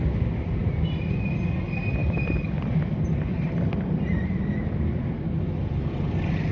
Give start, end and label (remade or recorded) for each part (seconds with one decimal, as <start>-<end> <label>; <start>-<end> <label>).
0.0-0.6 recorded; 0.6-1.6 remade; 1.6-2.0 recorded; 2.0-5.9 remade; 5.9-6.5 recorded